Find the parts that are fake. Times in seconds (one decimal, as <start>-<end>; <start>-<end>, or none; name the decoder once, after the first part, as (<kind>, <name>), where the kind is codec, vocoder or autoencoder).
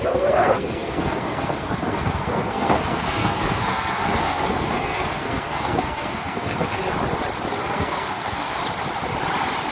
0.0-6.8 (codec, SNAC); 7.6-8.6